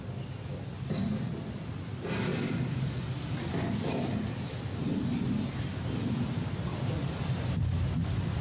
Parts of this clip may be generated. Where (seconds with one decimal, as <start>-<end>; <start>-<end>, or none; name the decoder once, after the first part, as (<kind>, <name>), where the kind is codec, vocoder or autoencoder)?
6.7-7.7 (vocoder, BigVGAN v2)